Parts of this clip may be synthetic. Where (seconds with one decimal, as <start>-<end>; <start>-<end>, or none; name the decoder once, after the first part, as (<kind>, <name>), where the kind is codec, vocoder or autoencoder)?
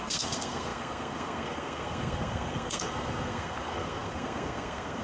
0.0-5.0 (codec, SNAC)